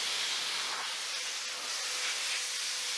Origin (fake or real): real